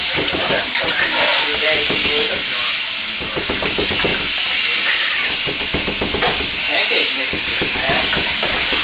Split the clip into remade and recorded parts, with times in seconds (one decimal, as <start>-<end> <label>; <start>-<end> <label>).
0.0-1.3 remade; 1.3-3.4 recorded; 3.4-4.1 remade; 4.1-6.9 recorded; 6.9-8.8 remade